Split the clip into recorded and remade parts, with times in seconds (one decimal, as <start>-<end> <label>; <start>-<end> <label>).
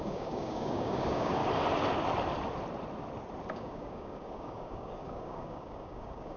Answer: 0.0-1.4 remade; 1.4-3.5 recorded; 3.5-6.4 remade